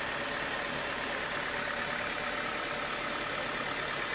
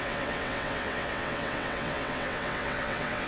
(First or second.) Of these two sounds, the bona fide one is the first